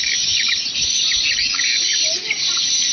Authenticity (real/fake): real